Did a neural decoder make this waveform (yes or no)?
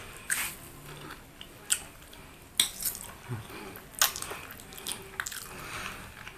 no